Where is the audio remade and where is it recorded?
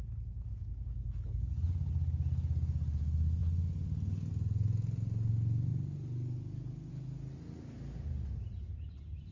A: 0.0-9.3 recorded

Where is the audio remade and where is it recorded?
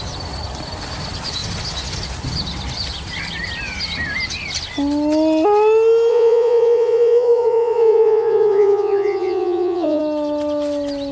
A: 0.0-6.1 recorded; 6.1-10.0 remade; 10.0-11.1 recorded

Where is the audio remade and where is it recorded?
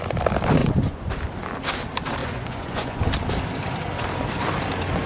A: 0.0-0.6 recorded; 0.6-1.1 remade; 1.1-2.2 recorded; 2.2-3.0 remade; 3.0-5.1 recorded